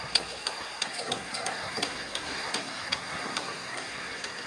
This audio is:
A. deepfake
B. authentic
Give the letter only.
A